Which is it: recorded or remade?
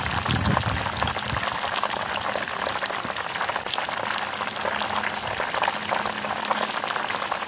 recorded